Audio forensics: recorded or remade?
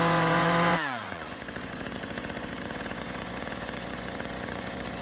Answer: remade